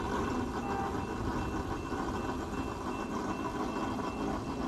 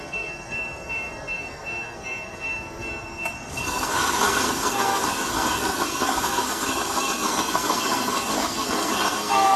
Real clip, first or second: first